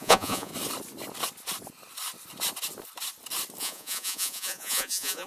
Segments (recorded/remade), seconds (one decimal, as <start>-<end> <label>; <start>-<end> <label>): 0.0-0.5 remade; 0.5-3.6 recorded; 3.6-5.3 remade